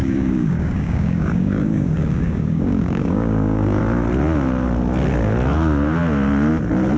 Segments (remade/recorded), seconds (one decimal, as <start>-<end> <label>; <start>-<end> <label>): 0.0-3.8 remade; 3.8-7.0 recorded